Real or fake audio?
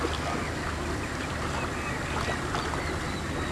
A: real